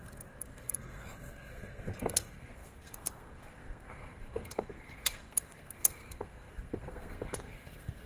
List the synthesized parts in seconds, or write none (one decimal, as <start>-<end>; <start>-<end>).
0.0-8.1